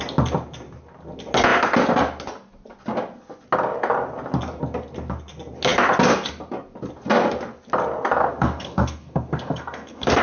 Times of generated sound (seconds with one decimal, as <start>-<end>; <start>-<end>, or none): 8.2-10.2